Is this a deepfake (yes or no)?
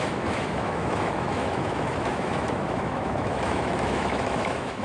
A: yes